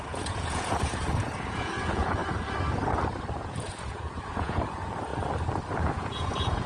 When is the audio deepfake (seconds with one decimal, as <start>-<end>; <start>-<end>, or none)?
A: 0.0-2.2; 3.4-5.1; 5.9-6.7